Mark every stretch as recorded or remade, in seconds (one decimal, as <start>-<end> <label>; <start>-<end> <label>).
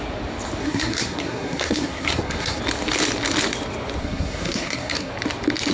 0.0-0.6 recorded; 0.6-2.6 remade; 2.6-4.0 recorded; 4.0-5.1 remade; 5.1-5.7 recorded